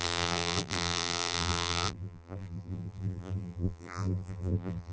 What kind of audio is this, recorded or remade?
remade